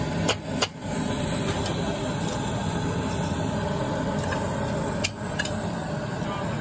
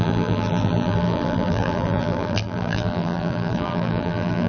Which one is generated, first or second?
second